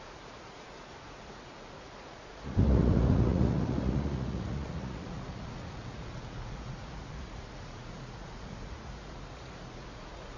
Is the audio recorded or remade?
remade